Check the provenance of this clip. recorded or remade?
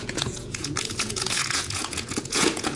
remade